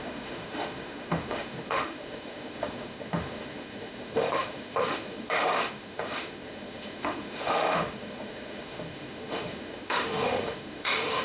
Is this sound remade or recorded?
remade